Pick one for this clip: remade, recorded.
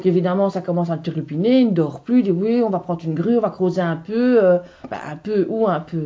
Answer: recorded